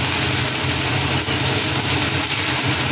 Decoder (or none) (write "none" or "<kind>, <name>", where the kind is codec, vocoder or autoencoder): none